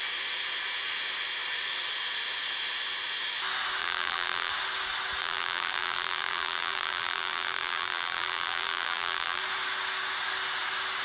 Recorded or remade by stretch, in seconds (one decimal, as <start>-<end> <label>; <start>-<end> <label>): 0.0-3.8 recorded; 3.8-4.5 remade; 4.5-5.2 recorded; 5.2-9.4 remade; 9.4-11.0 recorded

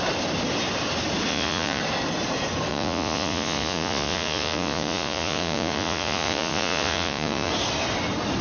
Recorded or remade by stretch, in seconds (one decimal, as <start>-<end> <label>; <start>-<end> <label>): 0.0-1.3 recorded; 1.3-1.8 remade; 1.8-2.7 recorded; 2.7-7.5 remade; 7.5-8.4 recorded

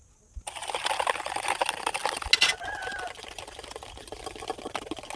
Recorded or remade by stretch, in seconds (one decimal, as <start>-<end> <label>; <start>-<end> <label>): 0.0-5.2 recorded